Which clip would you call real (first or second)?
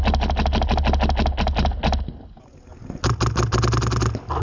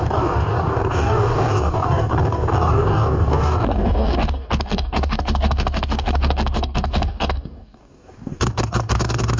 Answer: first